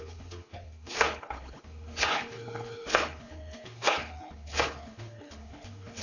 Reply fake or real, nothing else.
fake